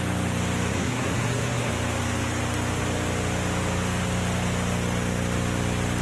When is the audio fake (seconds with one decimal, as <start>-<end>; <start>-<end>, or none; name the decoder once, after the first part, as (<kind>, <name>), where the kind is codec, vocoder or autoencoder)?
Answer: 0.7-1.7 (codec, SNAC)